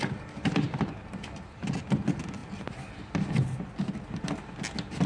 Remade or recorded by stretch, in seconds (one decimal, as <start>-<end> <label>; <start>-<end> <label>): 0.0-5.1 recorded